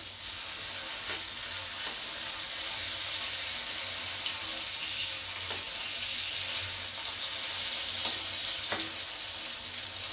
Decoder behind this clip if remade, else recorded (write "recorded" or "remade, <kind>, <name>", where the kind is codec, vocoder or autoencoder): recorded